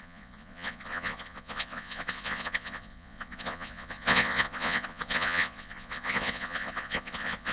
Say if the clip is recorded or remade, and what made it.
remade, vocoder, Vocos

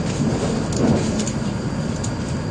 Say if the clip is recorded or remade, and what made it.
recorded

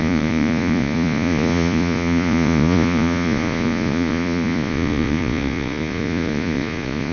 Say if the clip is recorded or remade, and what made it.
remade, vocoder, Vocos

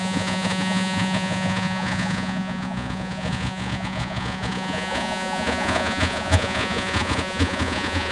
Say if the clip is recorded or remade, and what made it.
remade, vocoder, Vocos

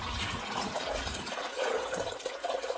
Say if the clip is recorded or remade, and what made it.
remade, vocoder, Vocos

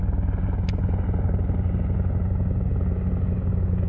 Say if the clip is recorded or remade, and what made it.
recorded